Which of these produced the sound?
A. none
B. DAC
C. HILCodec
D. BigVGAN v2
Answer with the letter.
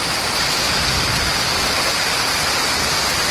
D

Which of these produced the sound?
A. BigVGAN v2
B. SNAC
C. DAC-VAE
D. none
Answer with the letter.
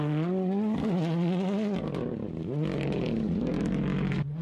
D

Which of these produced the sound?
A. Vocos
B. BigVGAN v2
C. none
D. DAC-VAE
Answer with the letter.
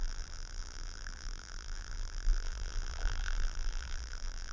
B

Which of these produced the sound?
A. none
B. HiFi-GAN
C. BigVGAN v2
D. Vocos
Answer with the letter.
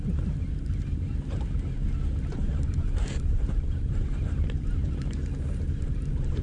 C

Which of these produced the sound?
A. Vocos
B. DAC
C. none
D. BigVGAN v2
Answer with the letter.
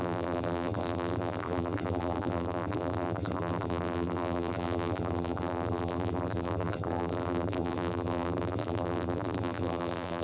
D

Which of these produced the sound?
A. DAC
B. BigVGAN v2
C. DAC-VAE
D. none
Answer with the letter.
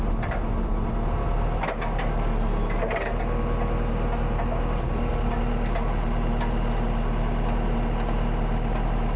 D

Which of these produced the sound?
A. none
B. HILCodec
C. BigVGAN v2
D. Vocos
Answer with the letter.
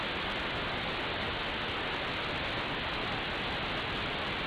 A